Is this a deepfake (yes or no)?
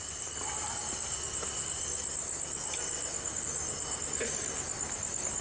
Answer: yes